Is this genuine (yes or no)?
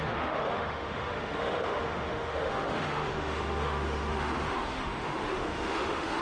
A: no